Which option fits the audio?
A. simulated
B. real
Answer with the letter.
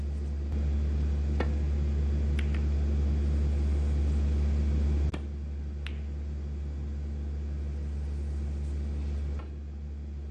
B